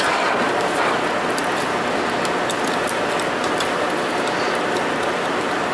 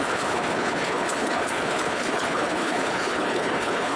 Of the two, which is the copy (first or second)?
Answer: second